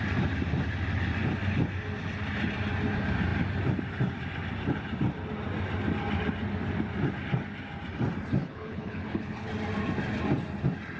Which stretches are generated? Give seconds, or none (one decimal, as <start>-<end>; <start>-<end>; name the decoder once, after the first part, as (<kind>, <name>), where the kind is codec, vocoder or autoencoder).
8.4-9.5 (codec, HILCodec)

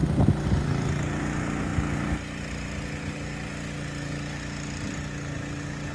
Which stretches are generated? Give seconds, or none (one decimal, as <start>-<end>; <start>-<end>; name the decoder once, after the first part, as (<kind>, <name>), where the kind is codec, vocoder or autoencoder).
none

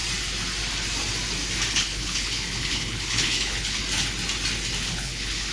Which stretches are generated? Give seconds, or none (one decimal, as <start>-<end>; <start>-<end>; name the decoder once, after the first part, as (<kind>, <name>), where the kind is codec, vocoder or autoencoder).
1.7-3.8 (codec, HILCodec); 4.8-5.5